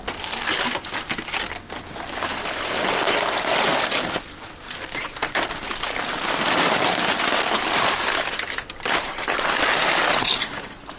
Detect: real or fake real